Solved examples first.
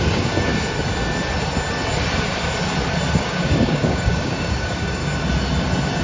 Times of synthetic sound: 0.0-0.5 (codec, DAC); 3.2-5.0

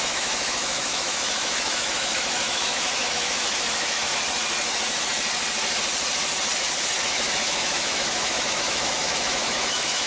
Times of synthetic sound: 0.0-4.1 (autoencoder, DAC-VAE); 7.0-10.1